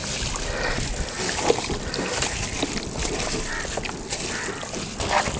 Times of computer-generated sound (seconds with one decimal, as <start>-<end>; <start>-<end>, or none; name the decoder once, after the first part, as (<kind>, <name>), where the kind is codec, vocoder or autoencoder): none